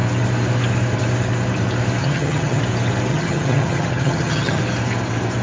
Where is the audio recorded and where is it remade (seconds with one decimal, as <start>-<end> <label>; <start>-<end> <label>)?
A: 0.0-2.0 recorded; 2.0-2.6 remade; 2.6-3.1 recorded; 3.1-4.6 remade; 4.6-5.4 recorded